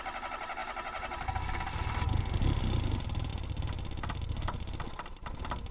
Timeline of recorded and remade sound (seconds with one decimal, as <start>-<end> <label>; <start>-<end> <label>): 0.0-5.7 recorded